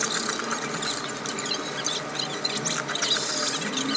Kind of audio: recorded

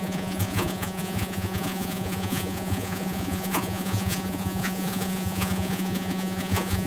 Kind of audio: remade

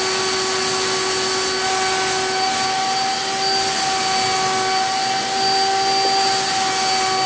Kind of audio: recorded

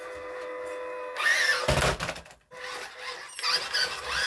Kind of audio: recorded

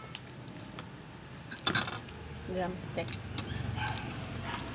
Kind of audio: recorded